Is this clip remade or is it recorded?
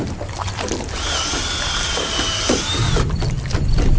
recorded